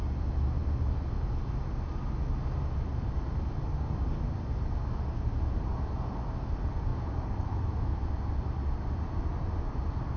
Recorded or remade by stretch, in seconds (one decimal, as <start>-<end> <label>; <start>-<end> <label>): 0.0-10.2 recorded